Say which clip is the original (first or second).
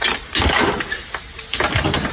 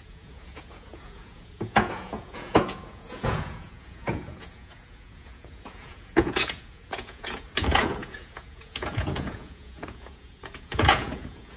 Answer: first